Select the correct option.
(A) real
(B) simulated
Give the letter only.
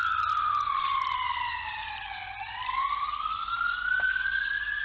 A